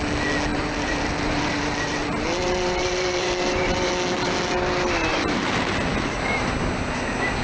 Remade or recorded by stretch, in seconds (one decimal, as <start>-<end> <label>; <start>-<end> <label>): 0.0-0.5 recorded; 0.5-3.9 remade; 3.9-5.1 recorded; 5.1-5.7 remade; 5.7-7.4 recorded

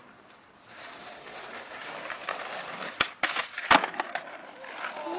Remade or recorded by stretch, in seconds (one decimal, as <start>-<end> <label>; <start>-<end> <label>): 0.0-3.1 remade; 3.1-5.2 recorded

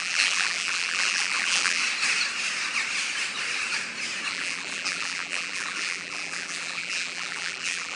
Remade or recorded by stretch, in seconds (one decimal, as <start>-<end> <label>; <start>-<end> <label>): 0.0-1.8 remade; 1.8-4.3 recorded; 4.3-8.0 remade

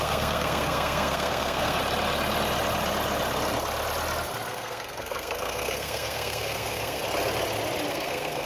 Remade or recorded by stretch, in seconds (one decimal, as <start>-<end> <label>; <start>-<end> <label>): 0.0-1.8 remade; 1.8-4.5 recorded; 4.5-7.0 remade; 7.0-7.9 recorded; 7.9-8.5 remade

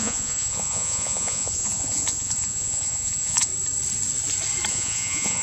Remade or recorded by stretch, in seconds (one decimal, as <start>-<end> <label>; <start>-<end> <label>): 0.0-3.5 remade; 3.5-4.7 recorded; 4.7-5.4 remade

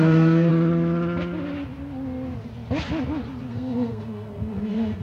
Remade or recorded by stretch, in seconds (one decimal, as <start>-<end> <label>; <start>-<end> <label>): 0.0-0.5 remade; 0.5-3.5 recorded; 3.5-5.0 remade

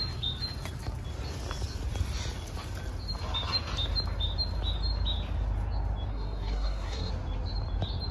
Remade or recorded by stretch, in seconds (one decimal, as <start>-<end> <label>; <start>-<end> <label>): 0.0-6.1 recorded; 6.1-7.1 remade; 7.1-8.1 recorded

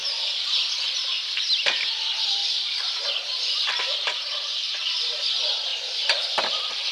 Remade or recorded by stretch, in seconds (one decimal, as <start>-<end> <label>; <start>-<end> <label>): 0.0-0.7 remade; 0.7-2.4 recorded; 2.4-5.3 remade; 5.3-5.7 recorded; 5.7-6.9 remade